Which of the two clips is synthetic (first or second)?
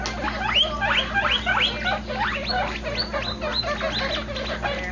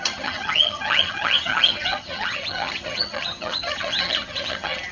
second